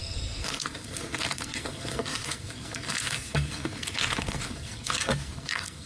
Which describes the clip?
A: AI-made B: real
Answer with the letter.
A